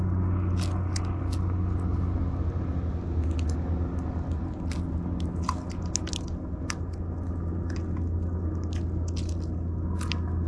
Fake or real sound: real